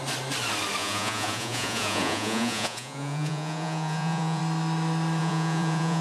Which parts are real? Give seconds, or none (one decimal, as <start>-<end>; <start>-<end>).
0.0-0.8; 4.4-5.2